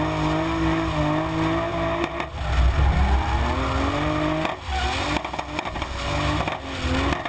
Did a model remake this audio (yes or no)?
no